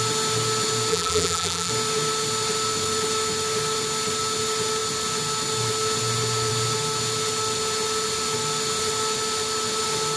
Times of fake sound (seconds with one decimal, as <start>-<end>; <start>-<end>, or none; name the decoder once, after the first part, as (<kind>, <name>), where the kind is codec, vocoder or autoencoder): 0.9-1.7 (vocoder, BigVGAN v2)